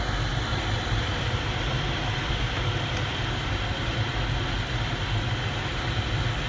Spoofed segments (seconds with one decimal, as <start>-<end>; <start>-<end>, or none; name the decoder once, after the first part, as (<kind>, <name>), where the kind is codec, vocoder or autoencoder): 0.5-3.3 (vocoder, BigVGAN v2)